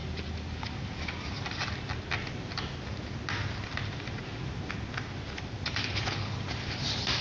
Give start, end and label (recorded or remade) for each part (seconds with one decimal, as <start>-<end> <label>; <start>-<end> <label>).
0.0-5.8 recorded; 5.8-6.4 remade; 6.4-7.2 recorded